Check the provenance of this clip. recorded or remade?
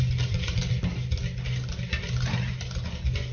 recorded